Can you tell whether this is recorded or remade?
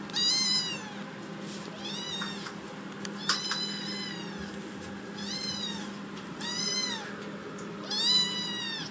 recorded